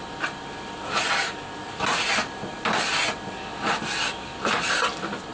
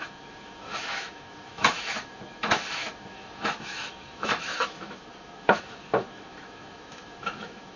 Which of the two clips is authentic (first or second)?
first